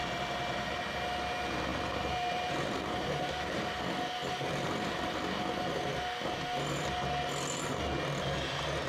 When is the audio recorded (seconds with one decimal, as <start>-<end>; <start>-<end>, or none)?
0.8-1.7; 3.8-4.2; 4.7-8.9